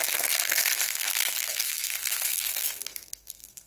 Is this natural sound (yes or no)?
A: no